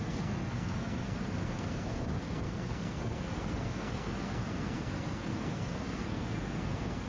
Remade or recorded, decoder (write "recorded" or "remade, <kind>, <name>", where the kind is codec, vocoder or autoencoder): remade, codec, SNAC